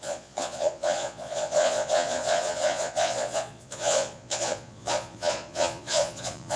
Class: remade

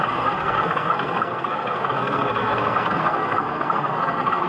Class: remade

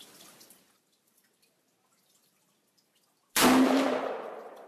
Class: remade